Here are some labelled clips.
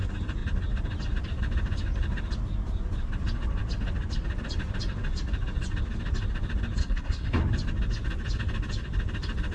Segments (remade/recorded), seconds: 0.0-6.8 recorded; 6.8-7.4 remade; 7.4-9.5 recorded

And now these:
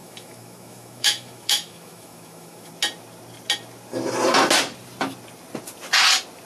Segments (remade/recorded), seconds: 0.0-2.7 remade; 2.7-6.5 recorded

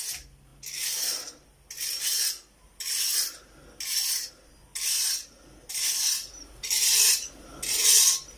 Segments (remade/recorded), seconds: 0.0-8.4 recorded